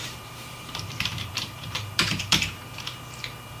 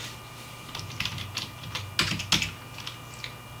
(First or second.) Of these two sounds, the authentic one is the second